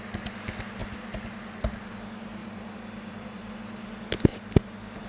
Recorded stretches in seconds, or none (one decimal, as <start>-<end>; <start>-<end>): 0.0-0.8; 1.9-2.4; 3.5-4.3